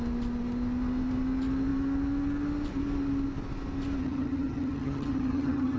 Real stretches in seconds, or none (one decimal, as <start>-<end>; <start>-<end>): 0.0-4.0